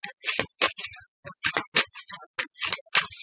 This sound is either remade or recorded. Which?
recorded